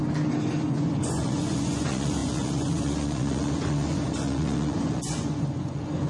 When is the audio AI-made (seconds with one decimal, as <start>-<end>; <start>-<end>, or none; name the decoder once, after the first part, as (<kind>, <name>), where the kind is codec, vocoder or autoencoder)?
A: 0.5-6.1 (vocoder, Vocos)